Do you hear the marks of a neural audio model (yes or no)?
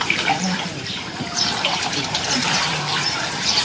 yes